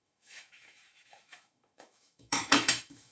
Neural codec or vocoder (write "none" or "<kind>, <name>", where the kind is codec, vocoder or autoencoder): autoencoder, DAC-VAE